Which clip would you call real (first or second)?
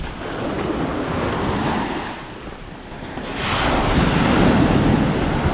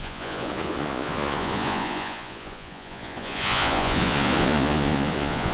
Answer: first